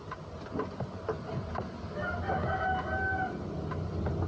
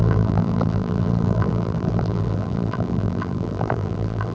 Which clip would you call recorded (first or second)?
first